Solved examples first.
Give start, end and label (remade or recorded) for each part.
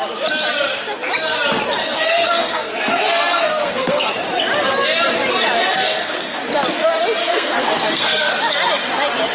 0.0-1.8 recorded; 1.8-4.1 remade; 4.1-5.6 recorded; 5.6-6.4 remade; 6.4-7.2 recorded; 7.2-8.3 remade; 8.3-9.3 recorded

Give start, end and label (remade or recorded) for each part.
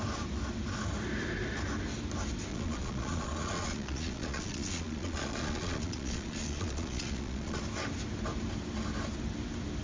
0.0-2.5 recorded; 2.5-7.6 remade; 7.6-9.8 recorded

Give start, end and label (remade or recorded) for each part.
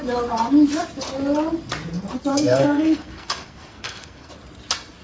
0.0-2.3 recorded; 2.3-4.3 remade; 4.3-5.0 recorded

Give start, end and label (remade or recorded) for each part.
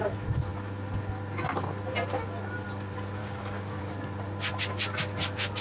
0.0-3.2 recorded; 3.2-3.8 remade; 3.8-5.6 recorded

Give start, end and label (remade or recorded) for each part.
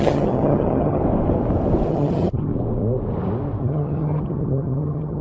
0.0-1.0 remade; 1.0-1.9 recorded; 1.9-2.5 remade; 2.5-3.6 recorded; 3.6-5.2 remade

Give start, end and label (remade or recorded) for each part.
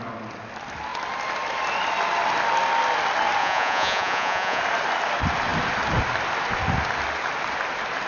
0.0-3.4 recorded; 3.4-4.6 remade; 4.6-8.1 recorded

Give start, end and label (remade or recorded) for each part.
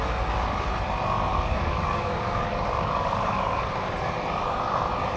0.0-1.3 recorded; 1.3-3.7 remade; 3.7-5.2 recorded